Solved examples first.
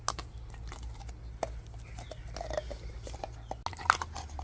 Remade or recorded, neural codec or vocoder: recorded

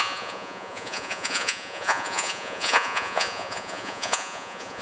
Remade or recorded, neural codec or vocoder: remade, vocoder, Vocos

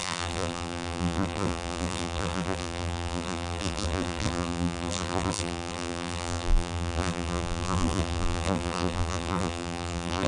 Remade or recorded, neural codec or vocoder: remade, vocoder, BigVGAN v2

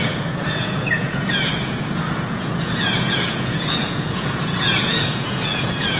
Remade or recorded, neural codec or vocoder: remade, vocoder, Vocos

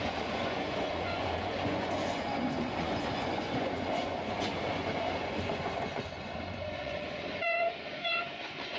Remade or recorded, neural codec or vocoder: remade, vocoder, Vocos